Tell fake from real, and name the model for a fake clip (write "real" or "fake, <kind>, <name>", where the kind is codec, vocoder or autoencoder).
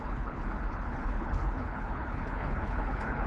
fake, codec, HILCodec